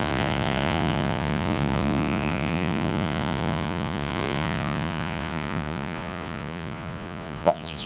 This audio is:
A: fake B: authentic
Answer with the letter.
A